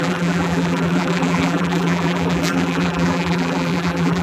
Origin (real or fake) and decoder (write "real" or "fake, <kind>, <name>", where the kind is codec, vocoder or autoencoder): fake, vocoder, BigVGAN v2